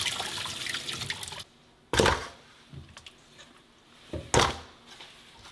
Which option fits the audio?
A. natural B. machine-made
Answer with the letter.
A